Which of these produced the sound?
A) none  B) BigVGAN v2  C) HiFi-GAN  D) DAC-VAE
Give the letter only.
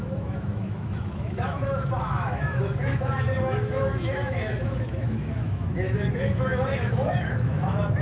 D